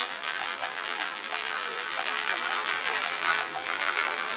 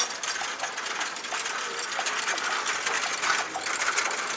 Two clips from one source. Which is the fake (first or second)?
first